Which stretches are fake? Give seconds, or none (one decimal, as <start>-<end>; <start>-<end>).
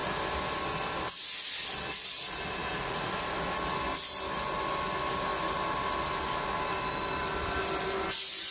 2.6-3.1